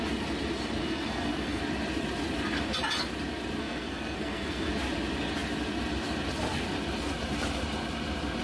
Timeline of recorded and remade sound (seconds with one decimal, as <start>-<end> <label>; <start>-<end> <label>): 0.0-0.8 recorded; 0.8-1.6 remade; 1.6-3.6 recorded; 3.6-4.7 remade; 4.7-8.4 recorded